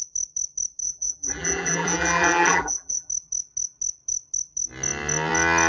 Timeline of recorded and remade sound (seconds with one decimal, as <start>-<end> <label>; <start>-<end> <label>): 0.0-0.8 recorded; 0.8-3.1 remade; 3.1-5.7 recorded